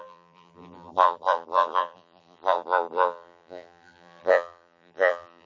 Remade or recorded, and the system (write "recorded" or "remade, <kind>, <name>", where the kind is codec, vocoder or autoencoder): remade, vocoder, BigVGAN v2